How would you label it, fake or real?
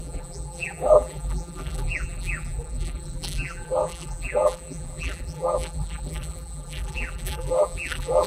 fake